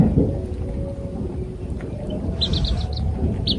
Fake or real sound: real